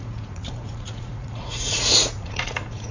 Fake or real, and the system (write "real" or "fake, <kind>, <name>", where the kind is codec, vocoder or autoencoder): fake, vocoder, Vocos